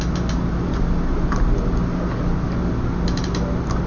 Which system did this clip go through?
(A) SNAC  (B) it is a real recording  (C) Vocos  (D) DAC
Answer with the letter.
B